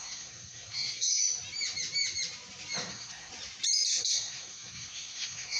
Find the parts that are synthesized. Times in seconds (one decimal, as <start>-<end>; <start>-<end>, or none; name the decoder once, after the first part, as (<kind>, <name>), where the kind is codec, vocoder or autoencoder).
0.0-1.2 (codec, SNAC); 2.9-3.3; 4.0-5.6